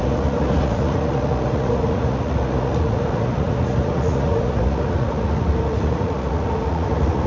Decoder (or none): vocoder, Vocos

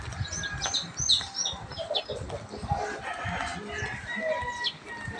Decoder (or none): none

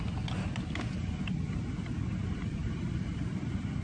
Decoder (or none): none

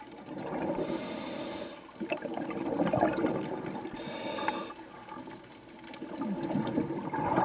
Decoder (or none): none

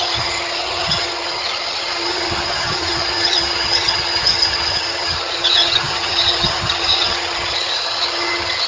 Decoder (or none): vocoder, HiFi-GAN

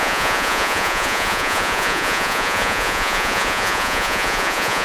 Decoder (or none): vocoder, Vocos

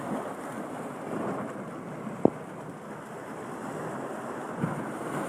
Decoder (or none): none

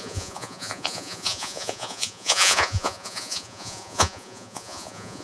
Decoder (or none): vocoder, Vocos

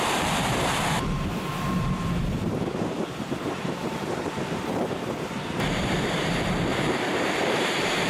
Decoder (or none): vocoder, BigVGAN v2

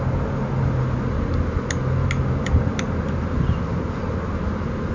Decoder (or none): none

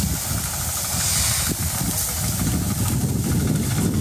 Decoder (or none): none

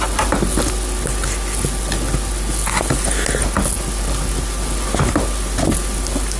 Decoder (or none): none